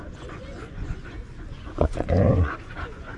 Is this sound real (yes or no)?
no